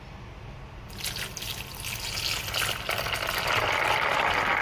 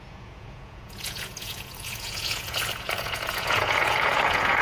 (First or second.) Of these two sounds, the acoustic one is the first